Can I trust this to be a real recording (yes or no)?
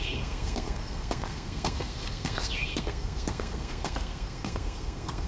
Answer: no